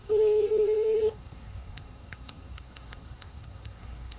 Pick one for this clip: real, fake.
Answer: fake